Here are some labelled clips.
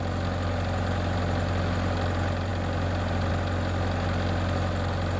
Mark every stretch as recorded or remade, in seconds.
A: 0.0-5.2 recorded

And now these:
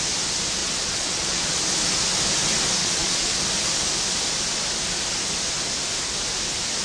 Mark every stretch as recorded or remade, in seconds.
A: 0.0-0.6 recorded; 0.6-1.6 remade; 1.6-2.8 recorded; 2.8-3.4 remade; 3.4-6.8 recorded

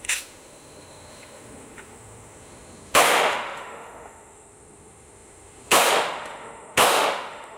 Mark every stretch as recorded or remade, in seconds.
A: 0.0-7.6 remade

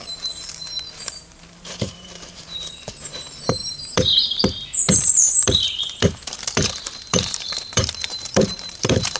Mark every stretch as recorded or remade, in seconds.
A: 0.0-9.2 remade

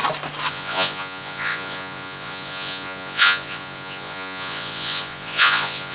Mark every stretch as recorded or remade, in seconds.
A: 0.0-0.5 recorded; 0.5-5.9 remade

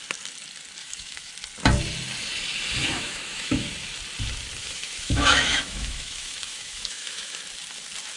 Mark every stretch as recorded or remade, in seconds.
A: 0.0-0.8 recorded; 0.8-1.3 remade; 1.3-2.8 recorded; 2.8-3.7 remade; 3.7-4.6 recorded; 4.6-7.4 remade; 7.4-8.2 recorded